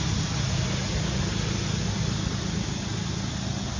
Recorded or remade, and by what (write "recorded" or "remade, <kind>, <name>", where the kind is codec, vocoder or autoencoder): recorded